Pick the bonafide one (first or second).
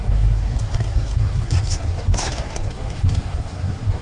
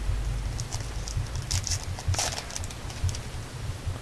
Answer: second